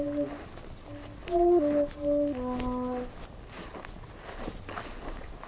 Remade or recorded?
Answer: recorded